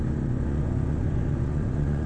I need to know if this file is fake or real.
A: fake